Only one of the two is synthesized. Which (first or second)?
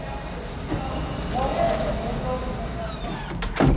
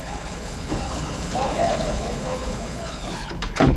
second